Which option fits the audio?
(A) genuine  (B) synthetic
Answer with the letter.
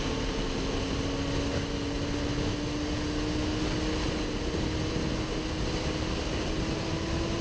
A